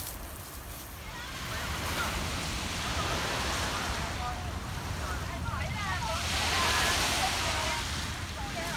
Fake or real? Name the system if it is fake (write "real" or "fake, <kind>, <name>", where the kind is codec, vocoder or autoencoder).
real